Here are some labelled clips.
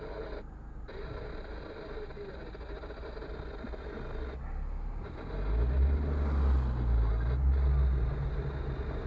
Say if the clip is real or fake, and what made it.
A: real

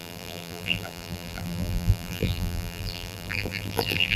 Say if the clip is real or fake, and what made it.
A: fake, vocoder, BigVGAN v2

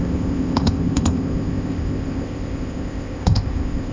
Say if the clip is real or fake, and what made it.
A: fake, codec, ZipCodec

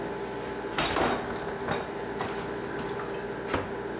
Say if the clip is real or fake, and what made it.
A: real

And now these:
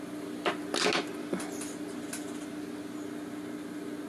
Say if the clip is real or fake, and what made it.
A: real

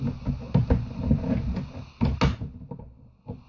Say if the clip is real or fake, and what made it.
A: real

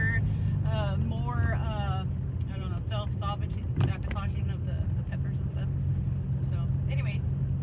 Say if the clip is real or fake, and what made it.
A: real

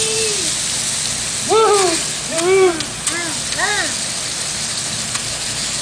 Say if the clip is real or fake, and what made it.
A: real